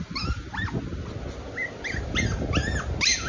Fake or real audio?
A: real